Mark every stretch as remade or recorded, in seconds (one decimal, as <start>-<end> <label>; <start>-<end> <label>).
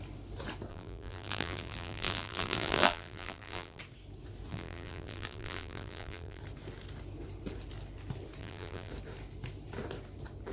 0.0-0.7 recorded; 0.7-3.8 remade; 3.8-4.5 recorded; 4.5-6.4 remade; 6.4-8.4 recorded; 8.4-8.9 remade; 8.9-10.5 recorded